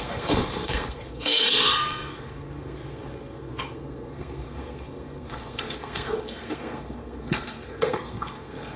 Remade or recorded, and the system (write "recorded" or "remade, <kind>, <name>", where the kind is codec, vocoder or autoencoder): remade, codec, SNAC